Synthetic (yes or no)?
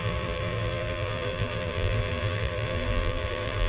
yes